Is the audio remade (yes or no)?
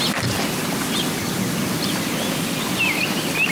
no